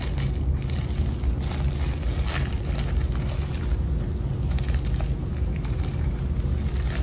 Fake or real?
real